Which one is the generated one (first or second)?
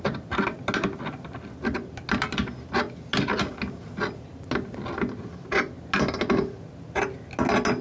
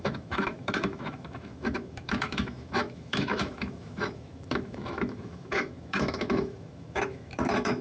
second